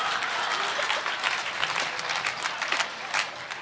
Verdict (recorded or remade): recorded